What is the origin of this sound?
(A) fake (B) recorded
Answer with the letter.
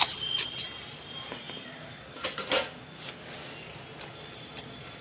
B